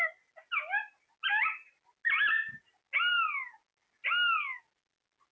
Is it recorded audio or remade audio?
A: recorded